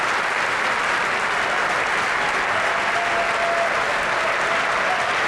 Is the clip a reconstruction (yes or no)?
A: no